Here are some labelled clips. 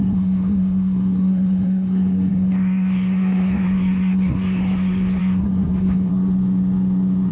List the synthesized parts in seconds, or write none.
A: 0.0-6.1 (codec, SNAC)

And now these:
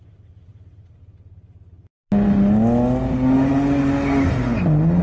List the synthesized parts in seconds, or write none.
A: none

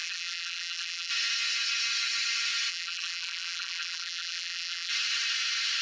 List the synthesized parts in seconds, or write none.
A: 0.0-1.1 (vocoder, BigVGAN v2); 2.7-4.9

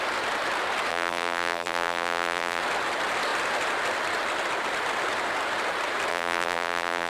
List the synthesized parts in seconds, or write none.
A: 0.9-2.6 (vocoder, BigVGAN v2); 6.1-7.1